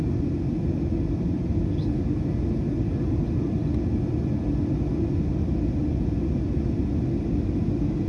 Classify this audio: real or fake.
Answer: real